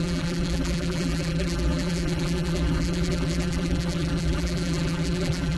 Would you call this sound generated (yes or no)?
yes